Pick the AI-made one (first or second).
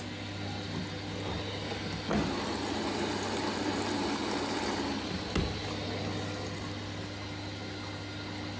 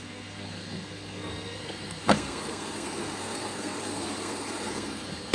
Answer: second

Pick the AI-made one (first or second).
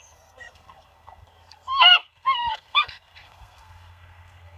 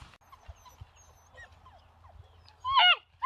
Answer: first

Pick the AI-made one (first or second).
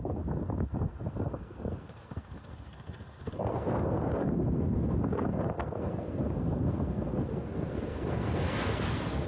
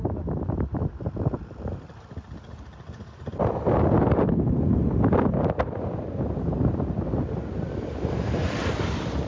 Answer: first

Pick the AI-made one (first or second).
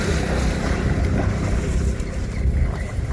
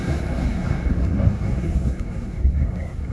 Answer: second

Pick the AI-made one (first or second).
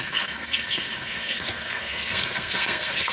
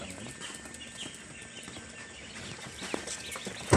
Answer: first